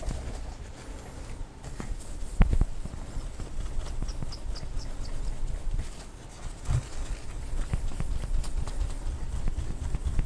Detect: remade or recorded recorded